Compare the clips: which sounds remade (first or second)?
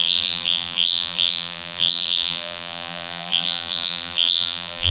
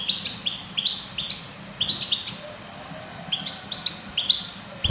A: first